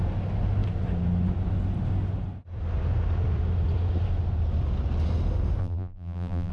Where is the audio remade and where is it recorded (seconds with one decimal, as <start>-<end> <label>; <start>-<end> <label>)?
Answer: 0.0-5.6 recorded; 5.6-6.5 remade